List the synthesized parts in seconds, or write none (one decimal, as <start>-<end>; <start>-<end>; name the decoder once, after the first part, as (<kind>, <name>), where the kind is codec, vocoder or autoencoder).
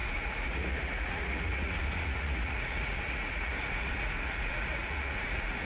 0.0-5.6 (vocoder, Vocos)